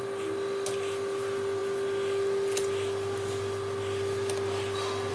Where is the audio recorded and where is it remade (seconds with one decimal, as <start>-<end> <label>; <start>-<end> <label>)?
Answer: 0.0-5.1 recorded